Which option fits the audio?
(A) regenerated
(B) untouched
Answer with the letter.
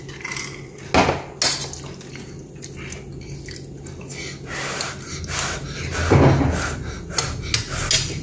B